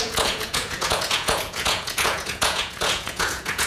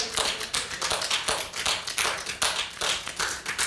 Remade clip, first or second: first